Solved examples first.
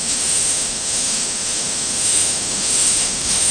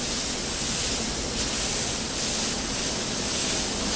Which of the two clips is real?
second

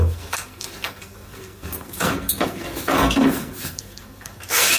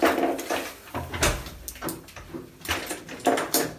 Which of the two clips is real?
second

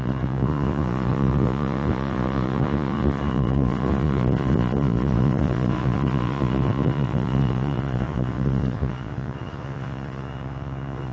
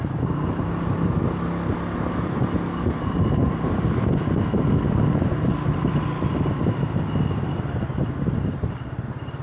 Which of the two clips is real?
second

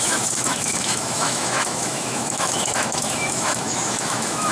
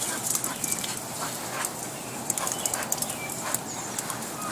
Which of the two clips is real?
second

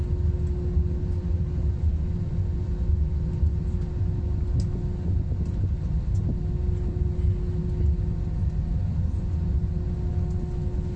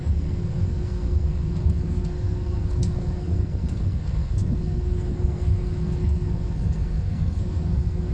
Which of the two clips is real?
first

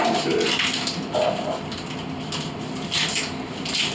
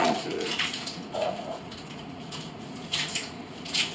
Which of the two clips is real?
first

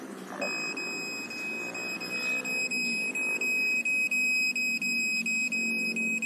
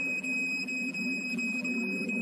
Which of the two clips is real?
first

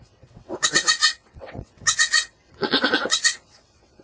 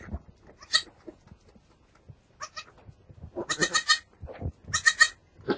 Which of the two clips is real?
second